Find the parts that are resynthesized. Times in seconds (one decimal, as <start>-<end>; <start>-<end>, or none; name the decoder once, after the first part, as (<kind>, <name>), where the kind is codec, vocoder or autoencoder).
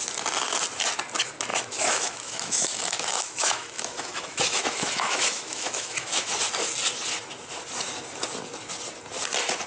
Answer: 1.5-6.3 (autoencoder, DAC-VAE)